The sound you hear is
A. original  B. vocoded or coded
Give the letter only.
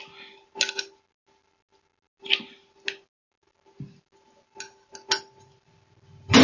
A